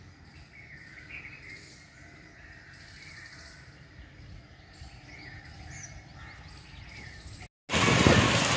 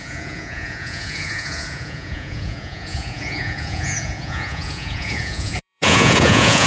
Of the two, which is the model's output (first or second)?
second